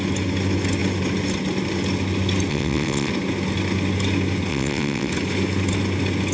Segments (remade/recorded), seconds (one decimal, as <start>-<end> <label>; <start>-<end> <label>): 0.0-2.5 recorded; 2.5-3.1 remade; 3.1-4.5 recorded; 4.5-5.1 remade; 5.1-6.3 recorded